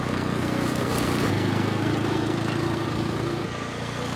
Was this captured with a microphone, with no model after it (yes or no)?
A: no